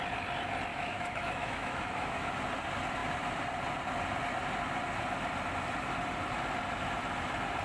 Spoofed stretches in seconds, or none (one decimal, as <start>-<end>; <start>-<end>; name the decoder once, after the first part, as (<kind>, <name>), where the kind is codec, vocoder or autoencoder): 0.7-2.3 (autoencoder, DAC-VAE)